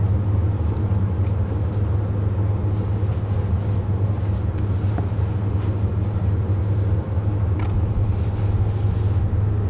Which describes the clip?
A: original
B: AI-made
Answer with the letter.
A